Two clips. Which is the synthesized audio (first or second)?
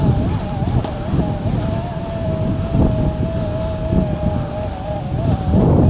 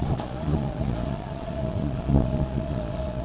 second